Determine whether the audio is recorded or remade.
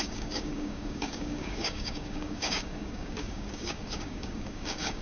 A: remade